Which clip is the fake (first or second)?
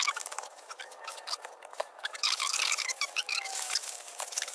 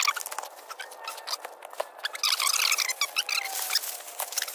first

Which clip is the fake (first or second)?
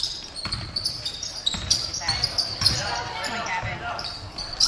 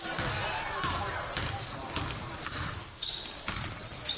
first